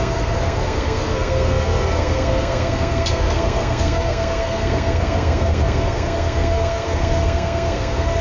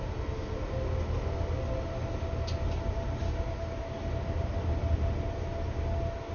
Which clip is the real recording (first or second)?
second